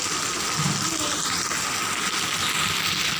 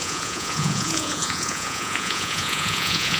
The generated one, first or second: second